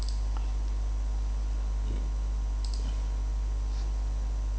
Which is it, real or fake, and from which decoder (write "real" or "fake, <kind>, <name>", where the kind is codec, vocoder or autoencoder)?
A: real